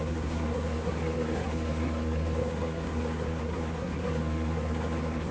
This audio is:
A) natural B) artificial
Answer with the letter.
B